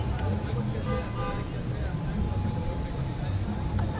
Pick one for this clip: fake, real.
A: real